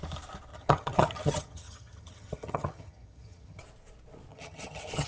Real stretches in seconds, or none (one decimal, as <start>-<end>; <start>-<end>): 0.0-0.5; 3.6-4.3